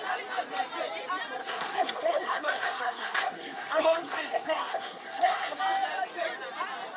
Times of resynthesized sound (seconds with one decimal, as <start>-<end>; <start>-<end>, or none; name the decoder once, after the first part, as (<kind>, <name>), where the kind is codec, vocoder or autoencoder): 1.4-5.6 (codec, SNAC)